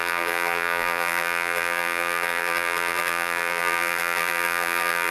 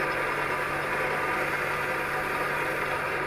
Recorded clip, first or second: second